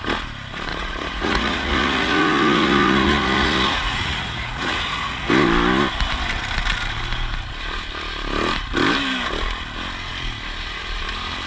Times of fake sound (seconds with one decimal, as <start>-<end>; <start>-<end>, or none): 0.7-5.3